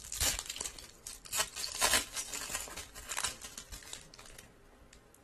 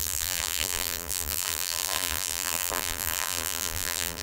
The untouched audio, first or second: first